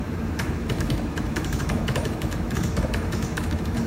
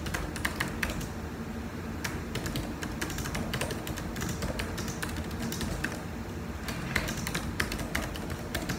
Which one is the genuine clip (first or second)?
second